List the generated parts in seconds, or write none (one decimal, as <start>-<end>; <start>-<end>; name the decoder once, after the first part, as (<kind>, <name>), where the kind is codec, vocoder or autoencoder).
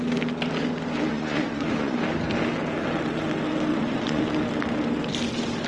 1.1-2.0 (vocoder, Vocos); 3.7-4.2